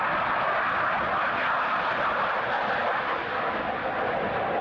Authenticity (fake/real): real